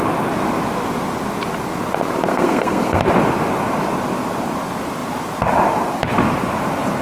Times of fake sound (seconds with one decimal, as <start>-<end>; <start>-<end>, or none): 2.3-3.0

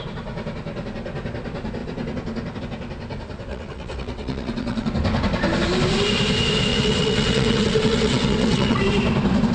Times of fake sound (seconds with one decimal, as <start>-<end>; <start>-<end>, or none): 3.5-4.9; 6.7-8.8

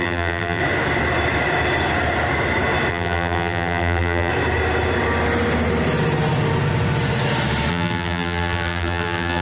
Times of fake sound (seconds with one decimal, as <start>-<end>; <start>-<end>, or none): 0.0-0.6; 2.9-4.3; 7.7-9.4

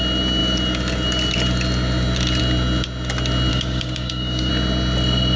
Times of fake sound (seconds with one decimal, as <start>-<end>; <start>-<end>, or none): 3.5-4.5